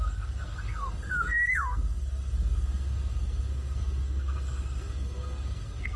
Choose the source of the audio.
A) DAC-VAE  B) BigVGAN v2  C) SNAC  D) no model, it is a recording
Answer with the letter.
C